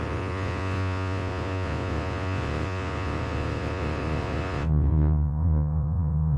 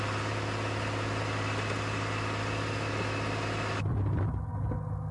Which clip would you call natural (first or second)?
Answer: second